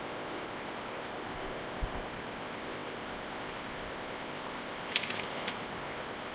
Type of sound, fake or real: fake